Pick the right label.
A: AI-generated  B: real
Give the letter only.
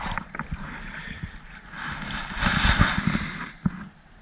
B